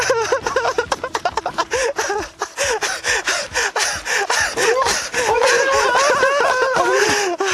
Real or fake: real